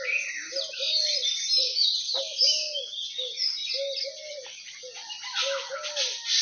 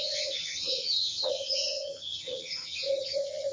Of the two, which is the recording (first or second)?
first